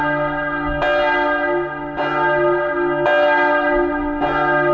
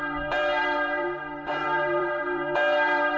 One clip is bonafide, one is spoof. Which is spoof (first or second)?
second